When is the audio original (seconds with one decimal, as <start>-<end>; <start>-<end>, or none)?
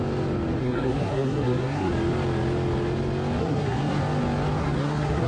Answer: 0.0-0.6; 1.9-3.4; 4.0-4.6